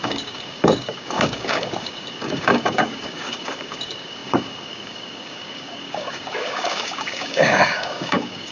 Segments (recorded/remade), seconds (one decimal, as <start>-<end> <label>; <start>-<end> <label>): 0.0-8.5 remade